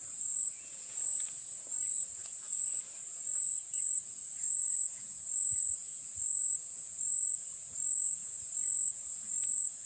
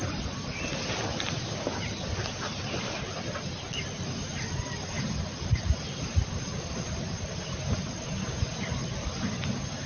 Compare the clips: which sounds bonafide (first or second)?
second